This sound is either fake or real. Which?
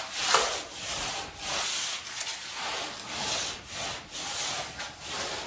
real